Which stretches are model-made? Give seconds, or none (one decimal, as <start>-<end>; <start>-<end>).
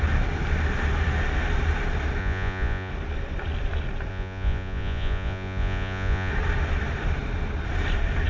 2.2-2.9; 4.1-6.3